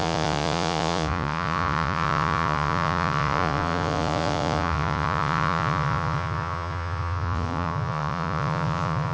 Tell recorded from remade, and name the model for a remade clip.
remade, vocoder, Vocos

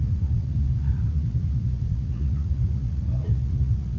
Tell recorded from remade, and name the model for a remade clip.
remade, vocoder, Vocos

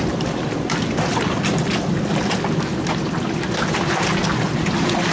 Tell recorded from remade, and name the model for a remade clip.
recorded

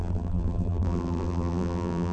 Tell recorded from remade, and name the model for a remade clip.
remade, vocoder, BigVGAN v2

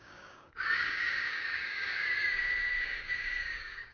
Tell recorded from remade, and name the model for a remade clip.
remade, codec, DAC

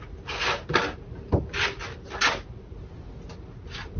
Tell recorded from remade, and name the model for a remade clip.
recorded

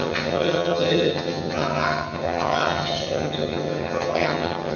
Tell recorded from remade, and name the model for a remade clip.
remade, vocoder, HiFi-GAN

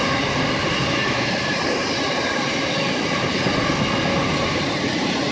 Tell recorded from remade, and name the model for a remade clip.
recorded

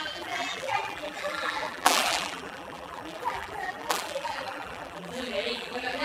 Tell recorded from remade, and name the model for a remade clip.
remade, vocoder, BigVGAN v2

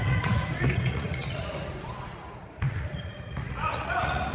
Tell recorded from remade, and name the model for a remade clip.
remade, vocoder, Vocos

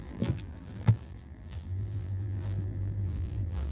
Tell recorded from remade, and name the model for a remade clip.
remade, vocoder, BigVGAN v2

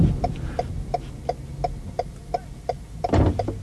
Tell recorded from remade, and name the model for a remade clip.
recorded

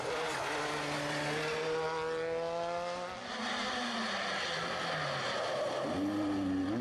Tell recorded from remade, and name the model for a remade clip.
recorded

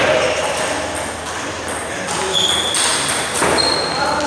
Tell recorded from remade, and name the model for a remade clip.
recorded